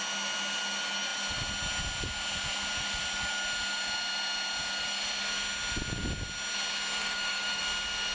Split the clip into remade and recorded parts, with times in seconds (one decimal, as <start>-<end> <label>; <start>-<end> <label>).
0.0-7.0 recorded; 7.0-7.6 remade; 7.6-8.1 recorded